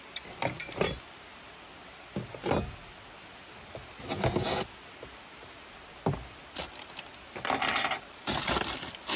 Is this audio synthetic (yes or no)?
no